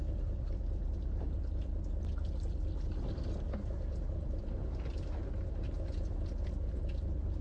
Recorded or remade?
recorded